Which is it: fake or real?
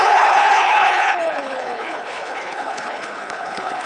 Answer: fake